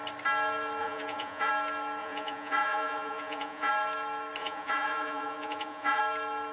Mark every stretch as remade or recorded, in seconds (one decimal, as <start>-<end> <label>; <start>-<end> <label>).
0.0-0.8 recorded; 0.8-1.5 remade; 1.5-2.0 recorded; 2.0-3.7 remade; 3.7-4.4 recorded; 4.4-6.0 remade; 6.0-6.5 recorded